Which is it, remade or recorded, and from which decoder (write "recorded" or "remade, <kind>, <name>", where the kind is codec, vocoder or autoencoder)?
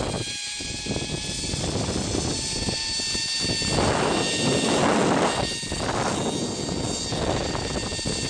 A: recorded